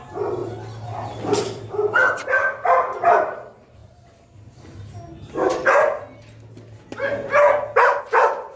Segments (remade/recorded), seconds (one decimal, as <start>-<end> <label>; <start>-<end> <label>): 0.0-0.4 remade; 0.4-1.4 recorded; 1.4-3.8 remade; 3.8-8.0 recorded; 8.0-8.6 remade